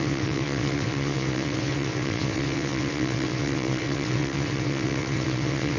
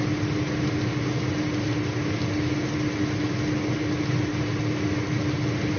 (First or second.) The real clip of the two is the second